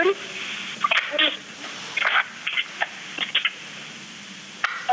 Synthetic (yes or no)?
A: no